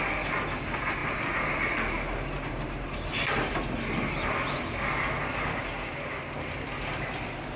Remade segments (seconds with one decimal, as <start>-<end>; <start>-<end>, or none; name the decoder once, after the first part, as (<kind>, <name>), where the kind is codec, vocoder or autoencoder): none